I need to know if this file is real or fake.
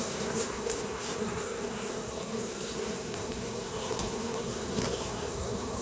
fake